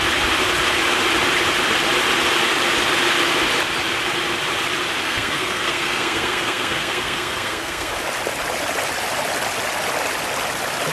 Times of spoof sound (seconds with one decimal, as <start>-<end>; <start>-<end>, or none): 5.0-7.9